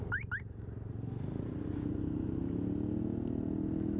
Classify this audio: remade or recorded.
recorded